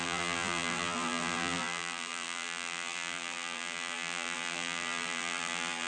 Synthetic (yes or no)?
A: yes